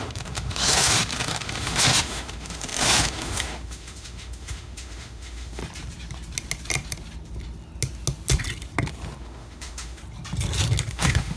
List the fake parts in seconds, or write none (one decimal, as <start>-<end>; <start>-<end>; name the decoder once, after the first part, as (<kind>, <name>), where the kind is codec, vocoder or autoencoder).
0.0-5.6 (autoencoder, DAC-VAE); 9.2-10.0; 10.9-11.4